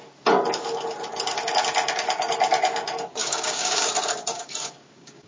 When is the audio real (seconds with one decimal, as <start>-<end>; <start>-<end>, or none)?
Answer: 0.0-3.2; 3.9-4.3

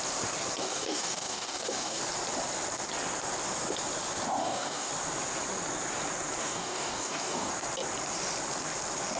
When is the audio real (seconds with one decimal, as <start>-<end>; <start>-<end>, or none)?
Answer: 0.0-0.6; 2.0-4.4; 4.9-6.4; 7.5-9.2